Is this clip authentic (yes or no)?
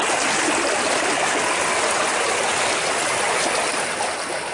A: yes